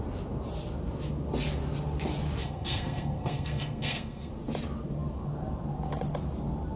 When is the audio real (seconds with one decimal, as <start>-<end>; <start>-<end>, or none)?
0.0-2.4; 4.3-6.8

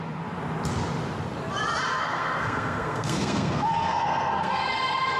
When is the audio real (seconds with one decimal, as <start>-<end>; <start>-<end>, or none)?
0.0-1.9

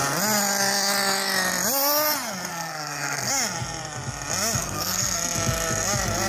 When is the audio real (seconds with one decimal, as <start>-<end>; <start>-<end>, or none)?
0.0-2.5; 3.3-4.6; 5.2-6.3

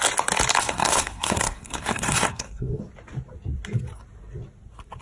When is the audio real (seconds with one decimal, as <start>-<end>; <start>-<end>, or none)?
0.0-0.6; 2.8-5.0

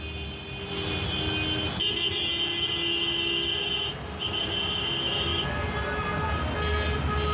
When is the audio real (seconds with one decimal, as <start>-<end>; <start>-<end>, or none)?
0.0-7.3

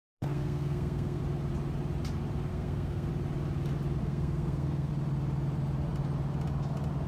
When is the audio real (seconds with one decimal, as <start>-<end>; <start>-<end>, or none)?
1.2-2.5; 3.1-4.0; 4.9-7.1

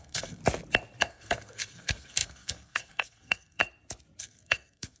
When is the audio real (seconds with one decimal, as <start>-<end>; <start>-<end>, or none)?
0.4-1.0; 3.6-4.2